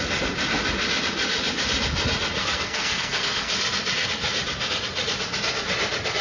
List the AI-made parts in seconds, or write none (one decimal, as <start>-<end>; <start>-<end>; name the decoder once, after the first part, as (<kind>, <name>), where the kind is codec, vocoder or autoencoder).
2.4-3.5 (codec, SNAC)